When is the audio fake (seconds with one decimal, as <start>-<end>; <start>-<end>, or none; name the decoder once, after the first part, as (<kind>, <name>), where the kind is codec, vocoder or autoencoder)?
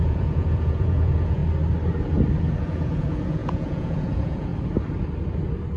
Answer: 0.0-1.4 (vocoder, Vocos); 2.6-4.5